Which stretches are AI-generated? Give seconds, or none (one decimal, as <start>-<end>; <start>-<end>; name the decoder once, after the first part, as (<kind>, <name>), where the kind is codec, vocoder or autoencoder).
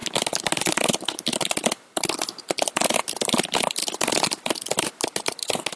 none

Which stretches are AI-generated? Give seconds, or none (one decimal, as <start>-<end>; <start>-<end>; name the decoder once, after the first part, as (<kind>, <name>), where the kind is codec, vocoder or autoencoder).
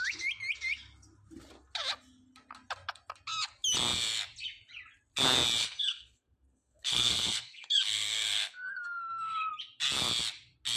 5.6-9.5 (codec, SNAC)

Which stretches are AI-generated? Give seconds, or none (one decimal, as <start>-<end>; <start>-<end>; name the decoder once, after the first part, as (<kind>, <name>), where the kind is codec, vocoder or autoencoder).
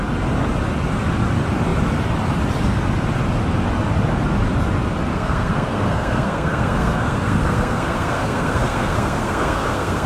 5.1-10.1 (codec, SNAC)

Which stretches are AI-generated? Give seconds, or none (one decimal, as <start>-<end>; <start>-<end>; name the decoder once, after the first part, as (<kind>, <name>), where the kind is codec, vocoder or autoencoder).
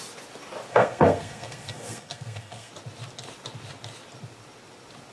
0.7-2.7 (codec, SNAC)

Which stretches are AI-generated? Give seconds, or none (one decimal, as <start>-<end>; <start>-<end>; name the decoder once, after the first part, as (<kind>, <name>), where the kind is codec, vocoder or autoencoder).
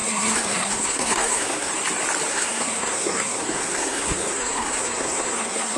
0.0-1.7 (codec, SNAC); 2.3-5.8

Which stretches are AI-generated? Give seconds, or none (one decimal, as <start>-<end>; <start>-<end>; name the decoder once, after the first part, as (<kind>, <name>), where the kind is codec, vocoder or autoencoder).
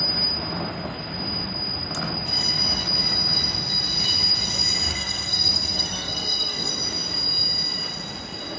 4.9-6.7 (codec, SNAC)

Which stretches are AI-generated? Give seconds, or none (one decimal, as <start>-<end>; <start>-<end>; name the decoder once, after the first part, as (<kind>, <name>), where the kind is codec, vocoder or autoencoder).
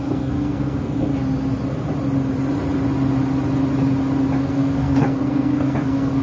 0.0-1.1 (codec, SNAC); 4.4-6.2